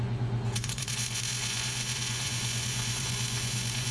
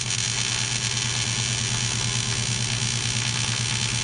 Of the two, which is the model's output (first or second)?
first